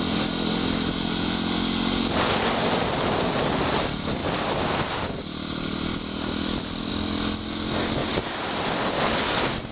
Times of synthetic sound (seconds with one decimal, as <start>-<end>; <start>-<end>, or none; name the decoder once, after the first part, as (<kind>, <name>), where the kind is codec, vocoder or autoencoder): 4.2-6.9 (vocoder, BigVGAN v2); 8.0-9.0